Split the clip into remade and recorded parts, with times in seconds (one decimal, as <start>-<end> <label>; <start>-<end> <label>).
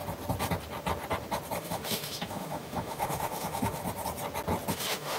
0.0-1.6 recorded; 1.6-3.8 remade; 3.8-4.7 recorded; 4.7-5.2 remade